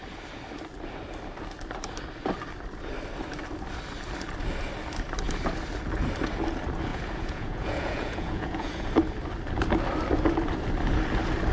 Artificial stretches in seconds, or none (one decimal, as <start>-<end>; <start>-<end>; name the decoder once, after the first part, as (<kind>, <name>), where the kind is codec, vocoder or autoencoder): 6.9-8.9 (vocoder, Vocos)